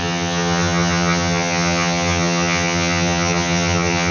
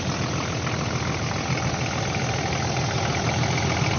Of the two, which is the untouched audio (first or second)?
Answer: second